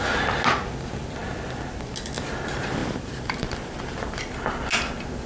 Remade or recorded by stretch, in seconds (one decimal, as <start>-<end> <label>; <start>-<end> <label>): 0.0-2.8 recorded; 2.8-4.2 remade; 4.2-5.3 recorded